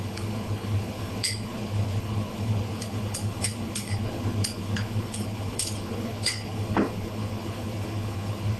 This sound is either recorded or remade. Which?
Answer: remade